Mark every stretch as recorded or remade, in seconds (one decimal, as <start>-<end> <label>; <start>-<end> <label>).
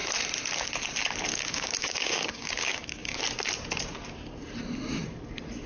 0.0-1.3 recorded; 1.3-3.2 remade; 3.2-5.7 recorded